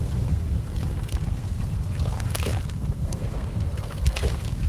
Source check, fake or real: fake